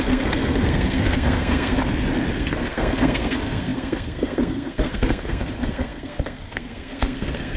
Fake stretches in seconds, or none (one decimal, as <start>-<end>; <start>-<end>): 0.0-1.8; 2.4-7.6